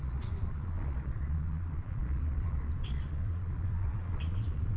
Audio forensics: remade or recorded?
remade